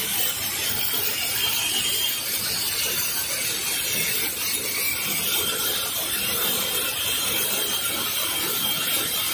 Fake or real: real